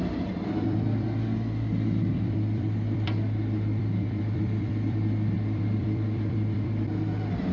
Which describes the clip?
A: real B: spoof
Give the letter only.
B